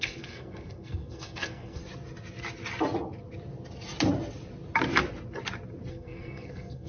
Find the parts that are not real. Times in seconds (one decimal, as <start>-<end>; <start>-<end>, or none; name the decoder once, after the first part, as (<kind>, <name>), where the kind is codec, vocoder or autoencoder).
0.0-1.8 (codec, SNAC); 5.9-6.9